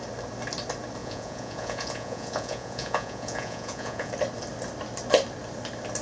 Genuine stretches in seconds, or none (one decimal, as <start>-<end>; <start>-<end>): 0.0-1.0; 4.1-6.0